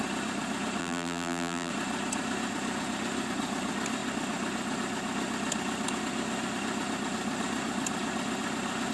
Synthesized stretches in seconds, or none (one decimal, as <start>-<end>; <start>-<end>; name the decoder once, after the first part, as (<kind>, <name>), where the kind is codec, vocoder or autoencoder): 0.8-1.7 (vocoder, BigVGAN v2)